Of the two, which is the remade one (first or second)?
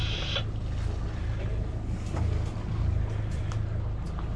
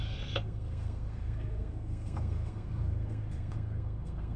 second